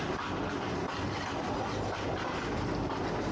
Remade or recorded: recorded